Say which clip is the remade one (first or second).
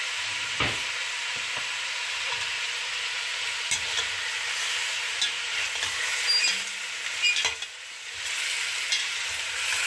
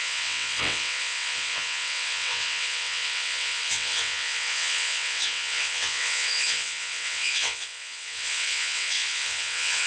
second